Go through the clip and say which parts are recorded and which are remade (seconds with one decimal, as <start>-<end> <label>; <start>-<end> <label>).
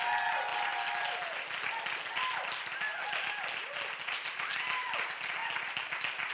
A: 0.0-6.3 recorded